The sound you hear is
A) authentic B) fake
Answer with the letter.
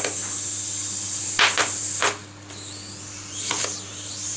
A